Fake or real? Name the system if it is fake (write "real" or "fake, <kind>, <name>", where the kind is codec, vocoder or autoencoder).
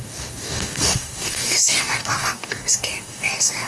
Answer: fake, codec, DAC